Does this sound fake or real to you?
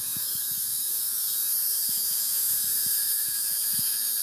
fake